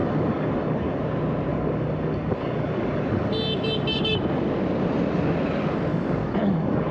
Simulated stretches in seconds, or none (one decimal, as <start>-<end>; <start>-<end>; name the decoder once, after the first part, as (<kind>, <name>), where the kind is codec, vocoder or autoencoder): 0.0-1.0 (codec, DAC); 1.5-3.3; 5.9-6.9